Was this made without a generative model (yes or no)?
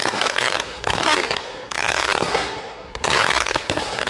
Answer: no